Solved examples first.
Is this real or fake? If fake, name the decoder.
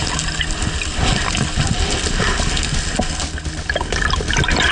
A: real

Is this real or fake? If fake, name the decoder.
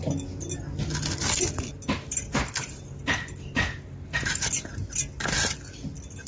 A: real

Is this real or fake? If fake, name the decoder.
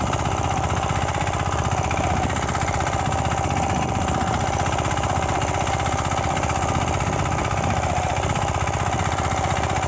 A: real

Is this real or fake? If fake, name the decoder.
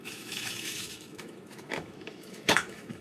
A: fake, autoencoder, DAC-VAE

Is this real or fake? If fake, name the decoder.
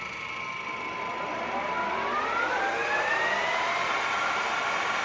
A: real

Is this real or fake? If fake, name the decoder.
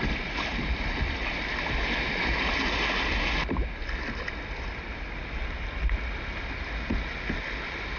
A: real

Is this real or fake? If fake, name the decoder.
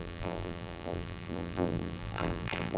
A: fake, vocoder, BigVGAN v2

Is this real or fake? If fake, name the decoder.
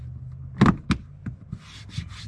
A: real